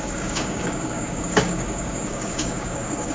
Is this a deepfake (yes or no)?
yes